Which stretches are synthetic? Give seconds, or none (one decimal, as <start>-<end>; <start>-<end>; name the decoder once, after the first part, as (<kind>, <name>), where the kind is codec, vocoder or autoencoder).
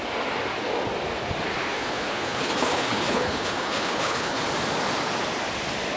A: 1.5-4.4 (codec, HILCodec)